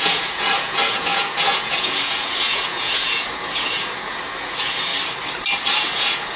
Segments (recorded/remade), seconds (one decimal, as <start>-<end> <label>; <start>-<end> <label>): 0.0-4.9 remade; 4.9-5.8 recorded; 5.8-6.4 remade